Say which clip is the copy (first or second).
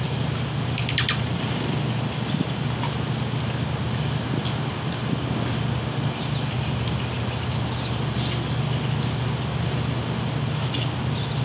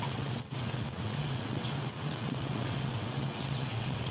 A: second